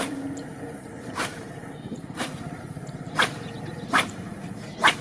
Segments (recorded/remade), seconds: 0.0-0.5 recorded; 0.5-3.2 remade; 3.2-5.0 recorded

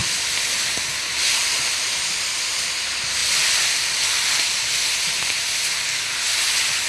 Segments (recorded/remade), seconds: 0.0-1.4 recorded; 1.4-2.5 remade; 2.5-6.9 recorded

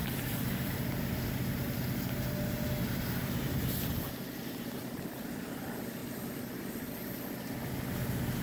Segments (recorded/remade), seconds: 0.0-1.0 remade; 1.0-4.4 recorded; 4.4-5.4 remade; 5.4-6.0 recorded; 6.0-7.2 remade; 7.2-8.4 recorded

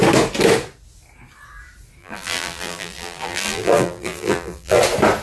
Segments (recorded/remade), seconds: 0.0-2.0 recorded; 2.0-4.8 remade; 4.8-5.2 recorded

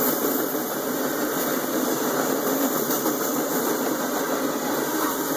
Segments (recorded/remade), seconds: 0.0-1.1 recorded; 1.1-4.3 remade; 4.3-5.4 recorded